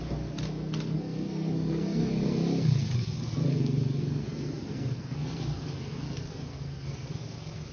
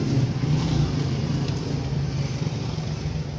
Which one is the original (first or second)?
second